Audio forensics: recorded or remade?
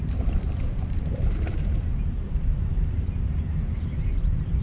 remade